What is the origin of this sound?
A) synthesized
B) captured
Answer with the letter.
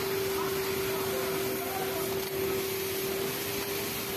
B